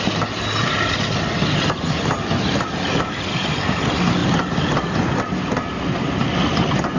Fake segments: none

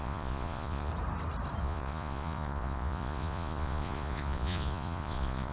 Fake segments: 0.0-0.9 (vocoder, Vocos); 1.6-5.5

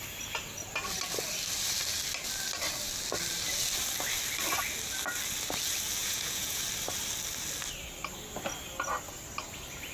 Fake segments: 6.0-6.6 (vocoder, Vocos)